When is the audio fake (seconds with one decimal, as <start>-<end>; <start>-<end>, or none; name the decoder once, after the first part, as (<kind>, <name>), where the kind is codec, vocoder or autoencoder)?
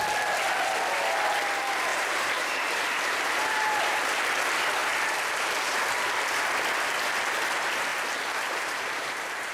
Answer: 1.9-4.2 (vocoder, BigVGAN v2); 7.9-9.5